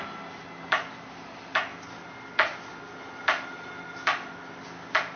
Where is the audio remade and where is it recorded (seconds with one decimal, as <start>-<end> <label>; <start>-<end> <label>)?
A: 0.0-5.2 recorded